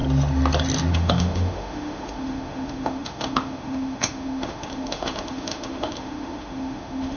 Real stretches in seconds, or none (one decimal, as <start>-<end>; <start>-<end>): 0.0-0.9

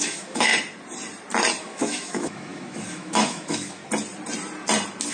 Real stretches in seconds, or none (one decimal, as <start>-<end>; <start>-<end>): 0.5-1.6; 3.8-5.1

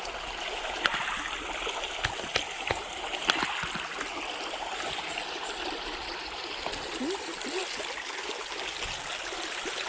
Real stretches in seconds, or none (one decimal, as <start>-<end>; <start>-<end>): 0.0-9.9

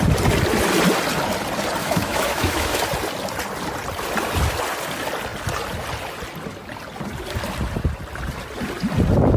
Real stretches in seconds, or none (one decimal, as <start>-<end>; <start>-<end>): 0.0-1.8; 2.8-9.4

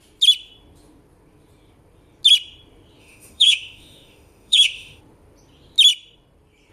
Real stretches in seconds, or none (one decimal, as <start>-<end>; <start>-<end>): 0.0-3.0; 5.0-6.7